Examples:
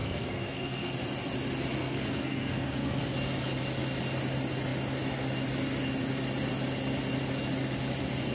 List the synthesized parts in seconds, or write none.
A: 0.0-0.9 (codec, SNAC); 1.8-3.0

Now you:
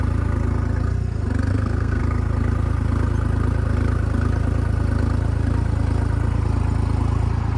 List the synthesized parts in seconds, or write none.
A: 1.5-2.0 (codec, SNAC)

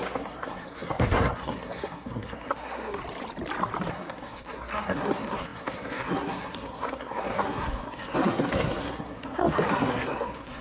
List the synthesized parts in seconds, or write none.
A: 0.0-3.0 (codec, SNAC); 3.9-10.6

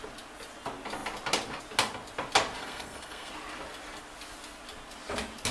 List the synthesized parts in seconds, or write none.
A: 2.6-3.3 (codec, SNAC)

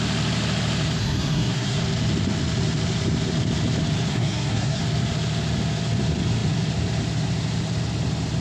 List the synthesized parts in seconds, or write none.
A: 1.0-1.8 (codec, SNAC); 4.1-4.8

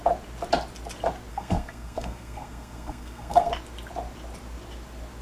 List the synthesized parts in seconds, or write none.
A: 1.3-3.5 (codec, SNAC)

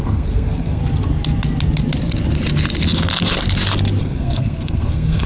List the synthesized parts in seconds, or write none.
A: 0.0-0.8 (codec, SNAC); 4.0-5.3

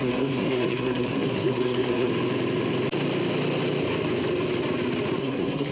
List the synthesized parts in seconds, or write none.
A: 0.0-2.1 (codec, SNAC); 5.2-5.7